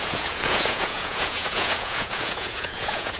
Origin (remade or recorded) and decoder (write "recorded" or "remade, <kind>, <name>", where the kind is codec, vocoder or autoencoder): remade, vocoder, Vocos